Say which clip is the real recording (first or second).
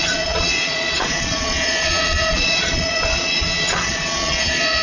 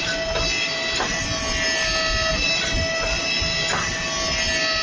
second